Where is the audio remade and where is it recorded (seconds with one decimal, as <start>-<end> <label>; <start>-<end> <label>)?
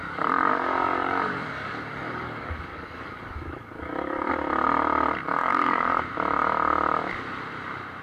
0.0-4.3 remade; 4.3-5.4 recorded; 5.4-6.0 remade; 6.0-8.0 recorded